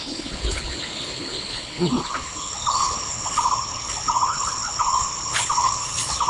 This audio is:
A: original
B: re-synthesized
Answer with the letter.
B